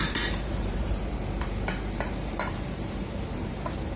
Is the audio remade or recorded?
remade